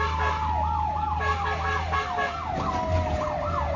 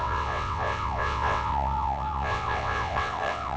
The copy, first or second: second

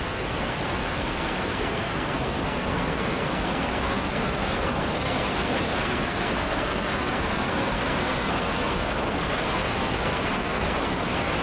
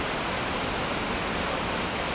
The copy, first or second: first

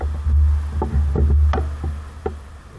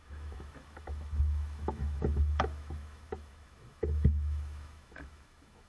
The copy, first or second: second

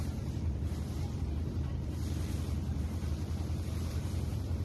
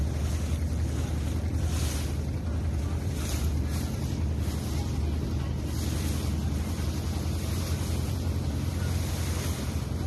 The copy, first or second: first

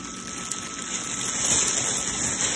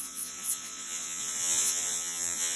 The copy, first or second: second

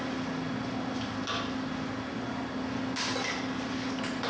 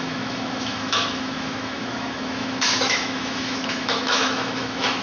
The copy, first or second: second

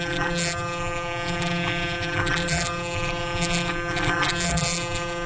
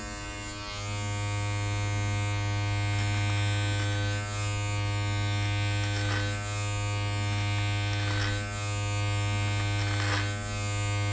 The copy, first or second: first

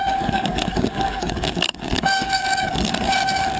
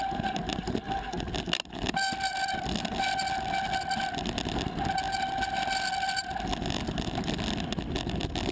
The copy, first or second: first